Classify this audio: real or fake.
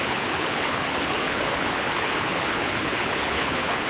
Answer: fake